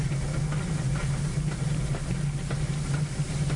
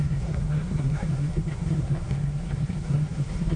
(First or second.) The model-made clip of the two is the second